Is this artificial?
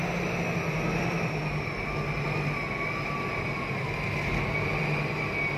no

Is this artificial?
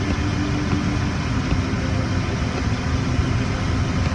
no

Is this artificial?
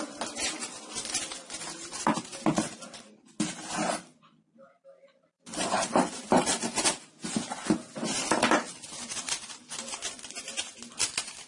yes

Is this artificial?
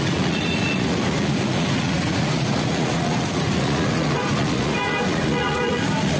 yes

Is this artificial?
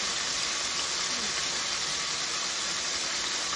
no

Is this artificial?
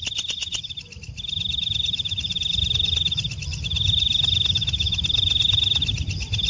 no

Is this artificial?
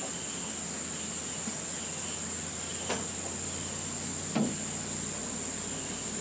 no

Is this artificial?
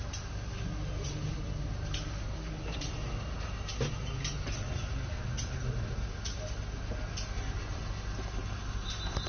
no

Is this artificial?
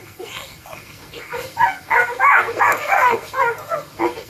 yes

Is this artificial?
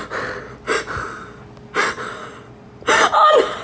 no